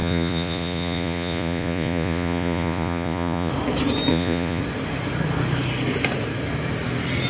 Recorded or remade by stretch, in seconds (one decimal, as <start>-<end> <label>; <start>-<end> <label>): 0.0-3.5 remade; 3.5-4.1 recorded; 4.1-4.6 remade; 4.6-7.3 recorded